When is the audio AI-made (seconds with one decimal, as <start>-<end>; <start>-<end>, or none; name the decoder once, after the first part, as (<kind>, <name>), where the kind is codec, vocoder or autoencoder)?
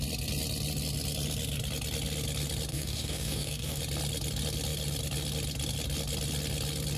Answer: 2.7-3.8 (codec, DAC)